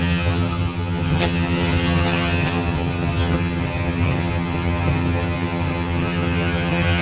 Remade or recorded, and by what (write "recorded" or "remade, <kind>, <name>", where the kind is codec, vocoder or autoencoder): remade, vocoder, HiFi-GAN